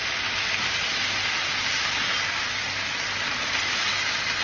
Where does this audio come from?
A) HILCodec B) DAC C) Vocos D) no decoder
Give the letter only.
D